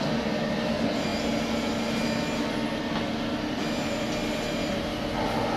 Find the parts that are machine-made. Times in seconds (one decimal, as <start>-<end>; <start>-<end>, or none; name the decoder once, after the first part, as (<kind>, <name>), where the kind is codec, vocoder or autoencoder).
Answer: none